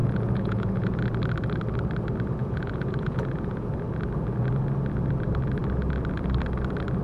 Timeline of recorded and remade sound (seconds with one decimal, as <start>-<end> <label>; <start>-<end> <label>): 0.0-1.0 remade; 1.0-2.4 recorded; 2.4-3.7 remade; 3.7-7.0 recorded